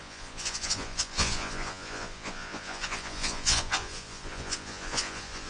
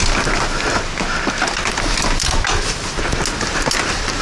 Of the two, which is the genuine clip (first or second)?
second